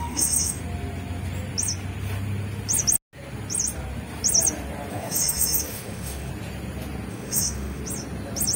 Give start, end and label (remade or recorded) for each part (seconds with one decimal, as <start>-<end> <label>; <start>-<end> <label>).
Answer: 0.0-0.6 remade; 0.6-4.9 recorded; 4.9-6.3 remade; 6.3-7.1 recorded; 7.1-7.8 remade; 7.8-8.6 recorded